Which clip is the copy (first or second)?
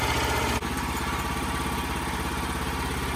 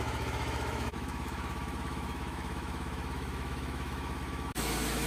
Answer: second